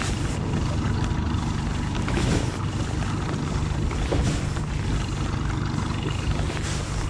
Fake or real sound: real